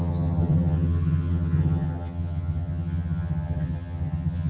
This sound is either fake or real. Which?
fake